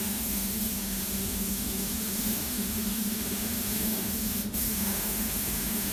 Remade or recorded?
remade